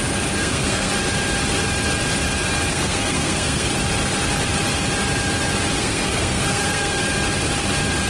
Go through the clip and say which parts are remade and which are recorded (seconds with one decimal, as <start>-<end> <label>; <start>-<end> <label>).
0.0-0.4 recorded; 0.4-0.9 remade; 0.9-2.7 recorded; 2.7-3.7 remade; 3.7-5.8 recorded; 5.8-7.0 remade; 7.0-8.1 recorded